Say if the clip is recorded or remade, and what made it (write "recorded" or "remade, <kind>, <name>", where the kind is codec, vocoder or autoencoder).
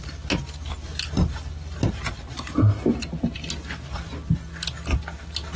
recorded